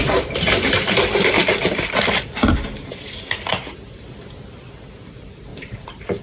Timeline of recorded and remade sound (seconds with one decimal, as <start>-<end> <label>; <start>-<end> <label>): 0.0-5.5 recorded; 5.5-6.2 remade